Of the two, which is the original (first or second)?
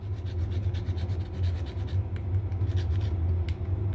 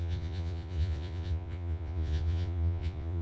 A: first